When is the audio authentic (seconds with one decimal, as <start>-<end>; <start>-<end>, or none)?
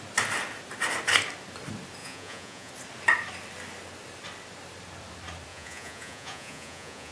0.0-2.0; 2.7-5.5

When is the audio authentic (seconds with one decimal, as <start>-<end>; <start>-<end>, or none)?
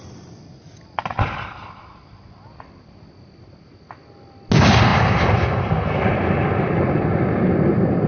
0.0-8.1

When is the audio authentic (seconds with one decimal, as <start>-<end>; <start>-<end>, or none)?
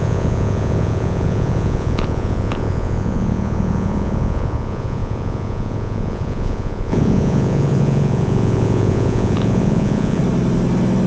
10.2-11.1